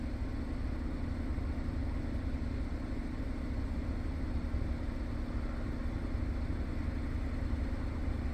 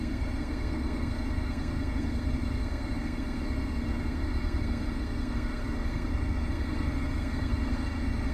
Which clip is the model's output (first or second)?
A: second